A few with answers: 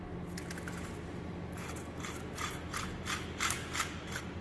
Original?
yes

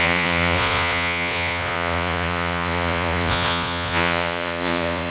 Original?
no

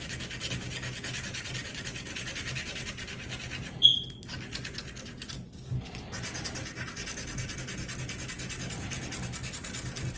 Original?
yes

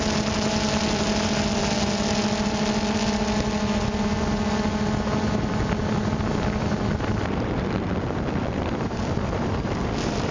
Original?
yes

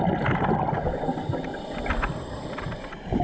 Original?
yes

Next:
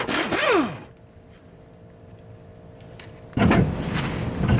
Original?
yes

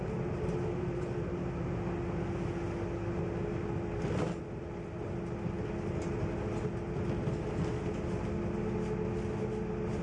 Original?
yes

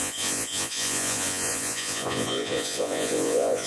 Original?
no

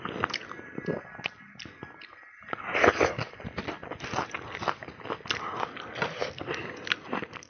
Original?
yes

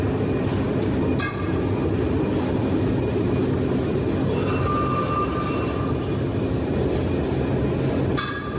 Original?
yes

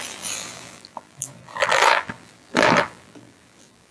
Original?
no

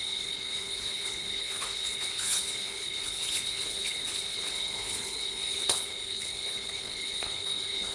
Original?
no